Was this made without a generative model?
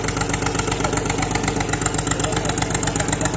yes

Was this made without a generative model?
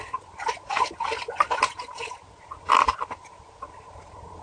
yes